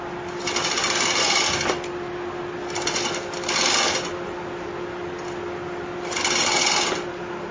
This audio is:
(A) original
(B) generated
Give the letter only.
A